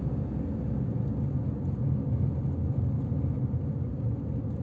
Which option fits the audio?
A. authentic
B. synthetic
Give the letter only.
A